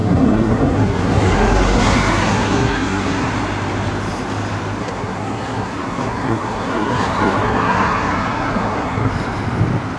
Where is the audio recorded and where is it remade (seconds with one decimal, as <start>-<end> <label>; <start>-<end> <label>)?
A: 0.0-3.3 remade; 3.3-4.8 recorded; 4.8-9.1 remade; 9.1-10.0 recorded

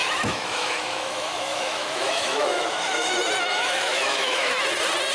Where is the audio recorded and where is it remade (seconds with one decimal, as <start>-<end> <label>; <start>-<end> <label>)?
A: 0.0-3.1 remade; 3.1-3.5 recorded; 3.5-4.5 remade; 4.5-5.1 recorded